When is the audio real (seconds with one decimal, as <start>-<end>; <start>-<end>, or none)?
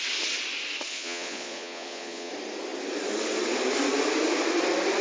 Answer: 0.0-0.9; 2.3-5.0